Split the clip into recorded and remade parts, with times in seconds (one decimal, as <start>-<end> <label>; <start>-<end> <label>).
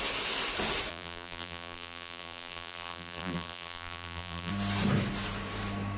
0.0-0.9 recorded; 0.9-4.5 remade; 4.5-6.0 recorded